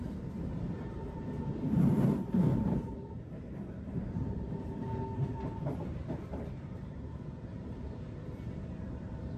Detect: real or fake fake